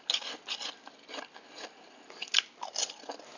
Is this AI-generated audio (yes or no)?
no